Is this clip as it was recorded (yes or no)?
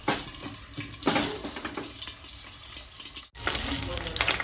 yes